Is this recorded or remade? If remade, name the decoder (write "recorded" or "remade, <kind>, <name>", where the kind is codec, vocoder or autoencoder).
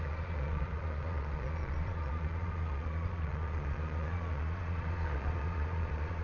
remade, vocoder, Vocos